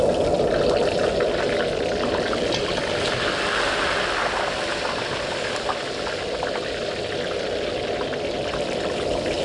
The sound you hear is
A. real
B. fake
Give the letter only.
A